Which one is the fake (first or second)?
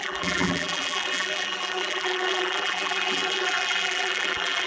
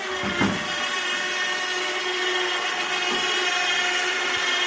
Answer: first